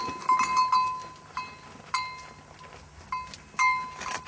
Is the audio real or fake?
real